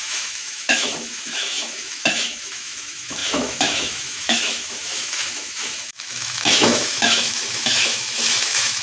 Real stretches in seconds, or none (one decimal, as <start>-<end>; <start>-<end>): none